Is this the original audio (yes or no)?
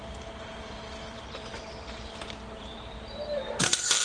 no